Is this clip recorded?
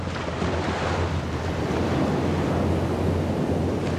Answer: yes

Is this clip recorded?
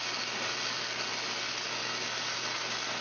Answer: yes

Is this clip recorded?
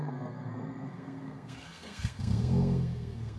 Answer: no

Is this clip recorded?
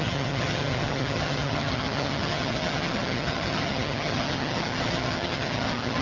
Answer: no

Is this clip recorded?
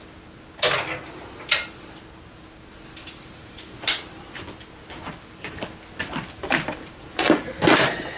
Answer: yes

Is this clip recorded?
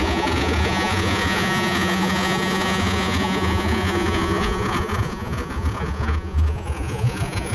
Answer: no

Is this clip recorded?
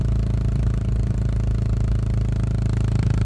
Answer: yes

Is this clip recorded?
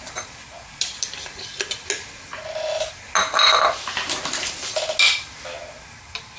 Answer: yes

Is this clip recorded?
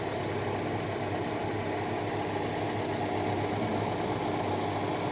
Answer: yes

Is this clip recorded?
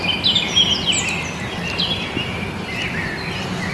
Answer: yes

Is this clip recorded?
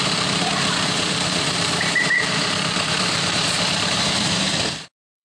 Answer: no